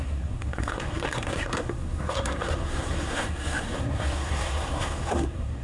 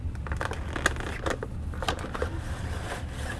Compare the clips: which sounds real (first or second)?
second